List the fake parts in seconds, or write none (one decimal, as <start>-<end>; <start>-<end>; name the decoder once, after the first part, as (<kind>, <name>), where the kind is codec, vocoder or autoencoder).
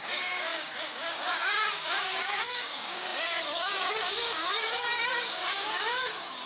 0.0-6.5 (codec, DAC)